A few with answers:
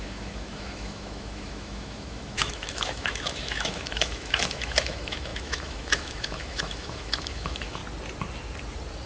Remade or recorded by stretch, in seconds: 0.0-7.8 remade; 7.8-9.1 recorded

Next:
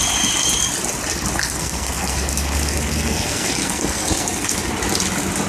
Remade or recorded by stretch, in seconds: 0.0-1.4 recorded; 1.4-4.7 remade; 4.7-5.5 recorded

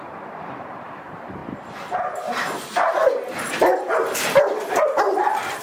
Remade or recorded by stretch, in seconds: 0.0-1.4 remade; 1.4-4.8 recorded; 4.8-5.6 remade

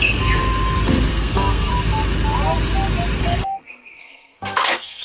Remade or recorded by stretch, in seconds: 0.0-0.4 remade; 0.4-1.1 recorded; 1.1-1.7 remade; 1.7-3.2 recorded; 3.2-5.0 remade

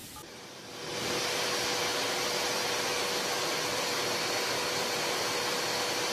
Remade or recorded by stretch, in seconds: 0.0-6.1 recorded

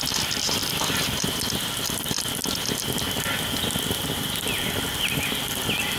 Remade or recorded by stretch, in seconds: 0.0-6.0 recorded

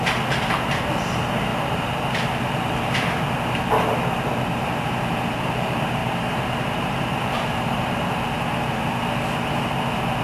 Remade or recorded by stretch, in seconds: 0.0-1.5 recorded; 1.5-2.1 remade; 2.1-6.0 recorded; 6.0-8.2 remade; 8.2-10.2 recorded

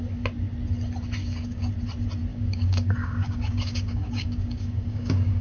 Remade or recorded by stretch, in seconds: 0.0-1.2 recorded; 1.2-1.7 remade; 1.7-2.3 recorded; 2.3-5.4 remade